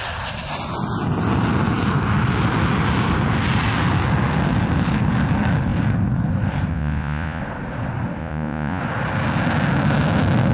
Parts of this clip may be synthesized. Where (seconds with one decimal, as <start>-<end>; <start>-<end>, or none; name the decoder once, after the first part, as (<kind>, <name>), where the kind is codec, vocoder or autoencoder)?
6.7-7.4 (vocoder, Vocos); 8.2-8.8